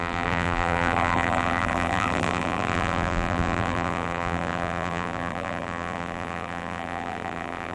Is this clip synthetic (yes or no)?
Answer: yes